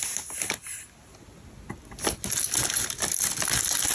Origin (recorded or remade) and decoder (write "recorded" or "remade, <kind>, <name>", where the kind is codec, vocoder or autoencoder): recorded